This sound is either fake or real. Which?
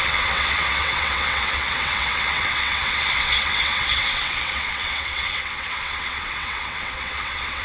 fake